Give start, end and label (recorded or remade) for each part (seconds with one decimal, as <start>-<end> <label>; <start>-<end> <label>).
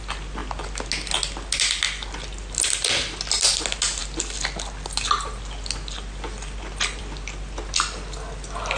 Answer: 0.0-8.8 recorded